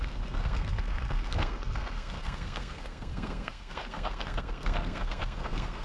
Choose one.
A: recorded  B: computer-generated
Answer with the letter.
B